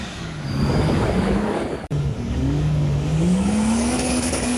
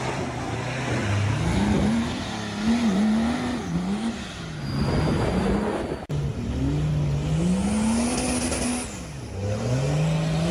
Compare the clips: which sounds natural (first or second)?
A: second